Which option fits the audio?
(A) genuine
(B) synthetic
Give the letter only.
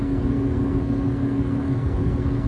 B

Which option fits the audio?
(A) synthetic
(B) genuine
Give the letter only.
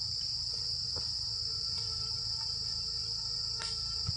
B